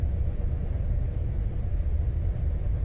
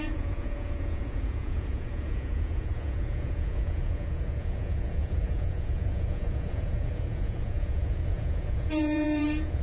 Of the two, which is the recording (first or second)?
first